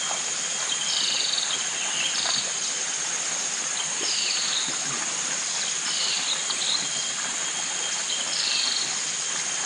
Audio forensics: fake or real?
real